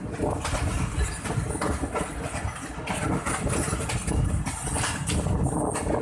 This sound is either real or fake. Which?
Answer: real